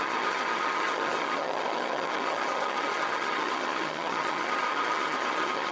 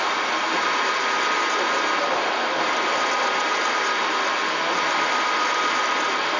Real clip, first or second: second